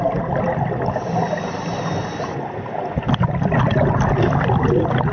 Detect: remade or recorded recorded